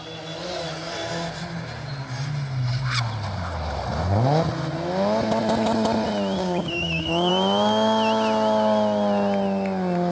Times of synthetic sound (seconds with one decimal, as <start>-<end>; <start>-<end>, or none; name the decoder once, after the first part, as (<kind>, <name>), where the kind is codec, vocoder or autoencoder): 6.4-7.3 (codec, DAC)